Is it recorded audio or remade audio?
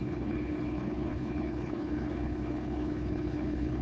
remade